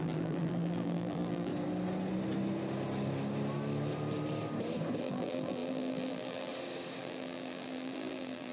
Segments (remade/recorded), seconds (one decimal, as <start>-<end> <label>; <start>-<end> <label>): 0.0-1.5 remade; 1.5-5.0 recorded; 5.0-6.5 remade; 6.5-7.0 recorded; 7.0-8.5 remade